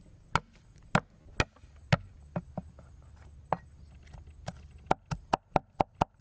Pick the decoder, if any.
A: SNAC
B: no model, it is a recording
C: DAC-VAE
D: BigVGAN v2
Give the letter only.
B